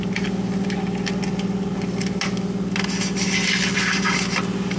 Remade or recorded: recorded